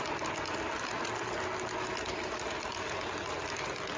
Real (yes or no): yes